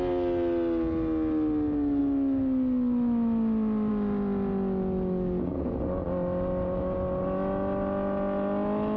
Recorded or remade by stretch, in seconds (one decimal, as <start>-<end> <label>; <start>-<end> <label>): 0.0-9.0 recorded